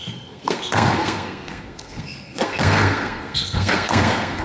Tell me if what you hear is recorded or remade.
remade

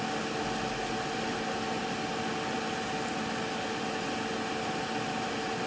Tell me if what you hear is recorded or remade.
recorded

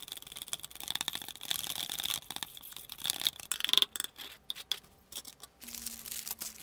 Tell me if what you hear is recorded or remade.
recorded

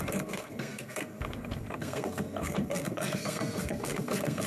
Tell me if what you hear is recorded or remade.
remade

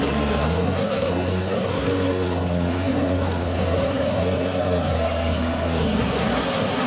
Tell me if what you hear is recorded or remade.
remade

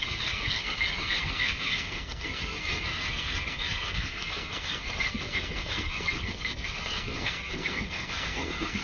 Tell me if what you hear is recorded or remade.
remade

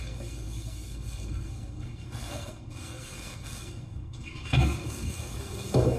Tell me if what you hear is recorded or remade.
remade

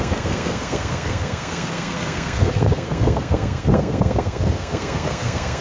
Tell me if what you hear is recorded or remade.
remade